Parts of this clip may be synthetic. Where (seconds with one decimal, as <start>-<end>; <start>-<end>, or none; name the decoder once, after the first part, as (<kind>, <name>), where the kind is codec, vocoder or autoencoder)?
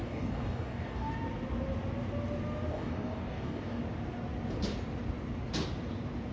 0.0-1.1 (codec, DAC); 2.7-3.8